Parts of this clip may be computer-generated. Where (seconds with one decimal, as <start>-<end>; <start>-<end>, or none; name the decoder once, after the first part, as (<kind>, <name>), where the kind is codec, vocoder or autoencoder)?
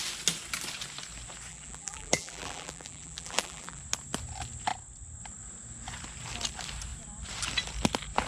1.5-3.8 (vocoder, BigVGAN v2)